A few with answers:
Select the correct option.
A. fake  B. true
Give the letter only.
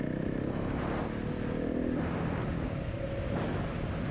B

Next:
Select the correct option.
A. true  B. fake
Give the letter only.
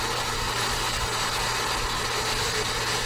A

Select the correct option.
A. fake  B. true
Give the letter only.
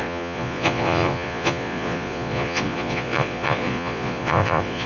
A